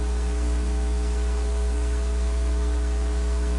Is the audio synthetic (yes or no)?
yes